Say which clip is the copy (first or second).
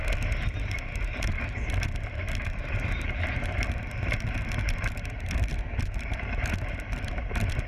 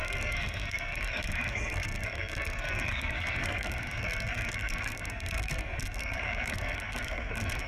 second